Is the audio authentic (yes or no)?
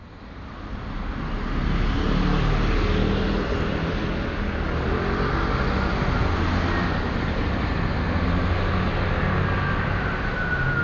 yes